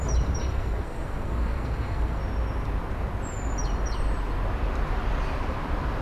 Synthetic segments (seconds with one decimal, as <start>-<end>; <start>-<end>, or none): 0.4-2.2